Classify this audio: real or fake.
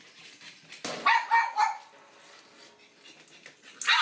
real